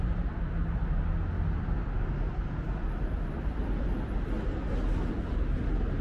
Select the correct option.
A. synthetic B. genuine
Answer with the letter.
B